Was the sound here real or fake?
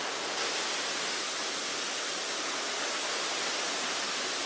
real